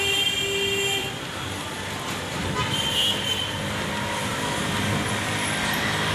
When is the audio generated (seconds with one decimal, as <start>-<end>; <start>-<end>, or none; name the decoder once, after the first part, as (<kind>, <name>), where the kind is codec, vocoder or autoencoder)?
1.0-1.7 (vocoder, BigVGAN v2); 4.3-4.8